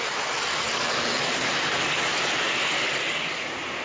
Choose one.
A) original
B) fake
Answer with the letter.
A